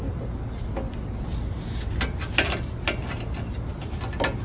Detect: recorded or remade recorded